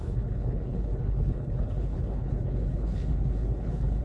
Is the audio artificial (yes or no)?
yes